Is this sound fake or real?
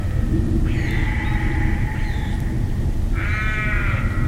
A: real